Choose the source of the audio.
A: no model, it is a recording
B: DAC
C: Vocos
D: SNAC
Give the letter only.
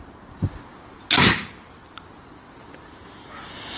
A